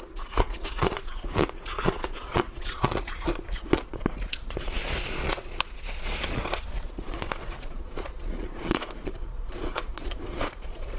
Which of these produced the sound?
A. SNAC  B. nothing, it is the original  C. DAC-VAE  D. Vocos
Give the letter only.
D